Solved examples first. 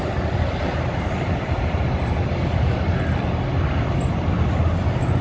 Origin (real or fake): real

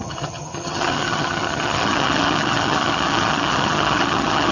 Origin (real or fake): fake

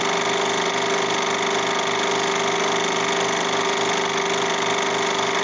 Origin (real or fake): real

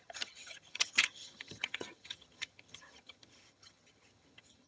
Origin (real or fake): fake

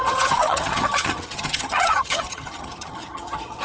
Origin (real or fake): fake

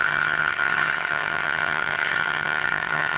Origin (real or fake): fake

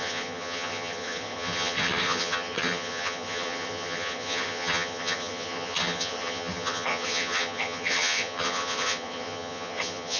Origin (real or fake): fake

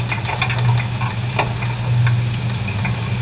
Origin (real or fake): real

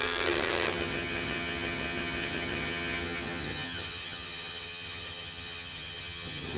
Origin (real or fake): fake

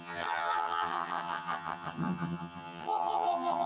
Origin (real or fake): fake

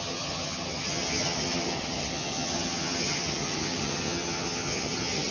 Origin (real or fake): fake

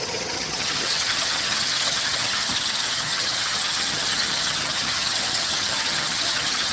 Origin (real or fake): fake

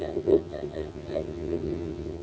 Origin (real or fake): fake